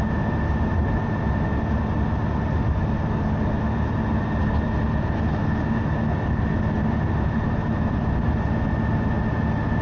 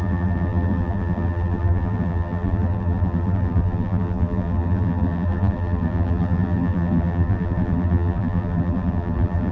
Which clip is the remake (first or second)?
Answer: second